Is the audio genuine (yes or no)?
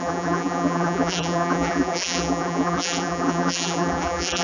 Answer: no